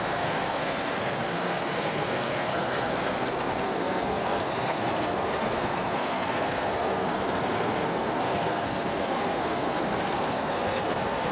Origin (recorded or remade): remade